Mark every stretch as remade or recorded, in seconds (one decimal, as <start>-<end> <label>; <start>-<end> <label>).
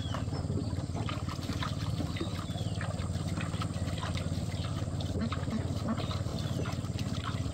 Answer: 0.0-0.6 recorded; 0.6-1.7 remade; 1.7-4.7 recorded; 4.7-5.3 remade; 5.3-7.5 recorded